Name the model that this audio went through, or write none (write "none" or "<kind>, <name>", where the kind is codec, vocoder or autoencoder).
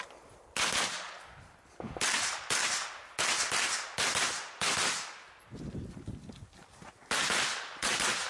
none